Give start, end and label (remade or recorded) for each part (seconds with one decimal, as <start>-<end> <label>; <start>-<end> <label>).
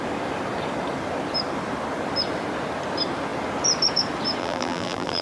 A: 0.0-4.4 recorded; 4.4-5.2 remade